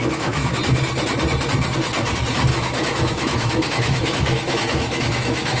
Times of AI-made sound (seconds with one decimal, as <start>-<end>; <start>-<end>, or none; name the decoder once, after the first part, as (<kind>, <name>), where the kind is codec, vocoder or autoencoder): 0.0-0.6 (autoencoder, DAC-VAE); 2.5-5.6